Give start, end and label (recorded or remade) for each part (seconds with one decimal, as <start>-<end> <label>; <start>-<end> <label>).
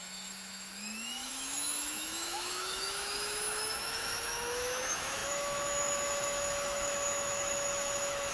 0.0-8.3 remade